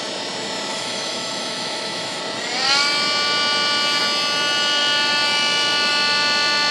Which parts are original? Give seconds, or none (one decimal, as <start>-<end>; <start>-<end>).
0.0-0.7; 2.2-6.7